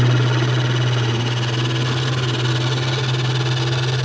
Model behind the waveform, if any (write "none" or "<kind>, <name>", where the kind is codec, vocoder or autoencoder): none